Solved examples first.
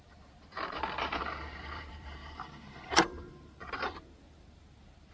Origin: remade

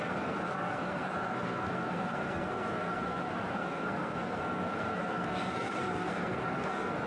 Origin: remade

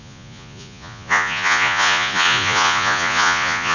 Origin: remade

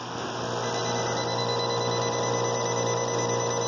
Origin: recorded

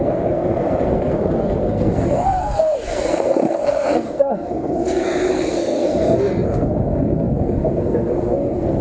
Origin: remade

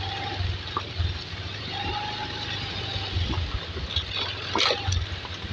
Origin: recorded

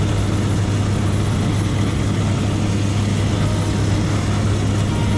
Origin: recorded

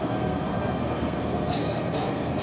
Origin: remade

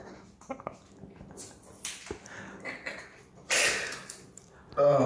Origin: recorded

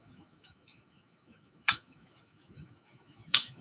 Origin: remade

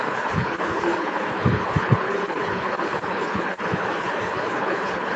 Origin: remade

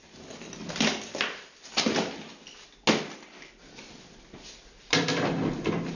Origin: recorded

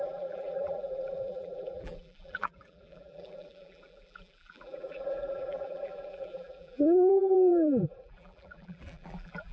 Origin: remade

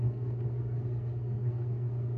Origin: remade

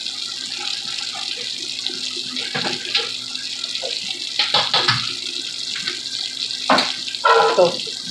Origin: recorded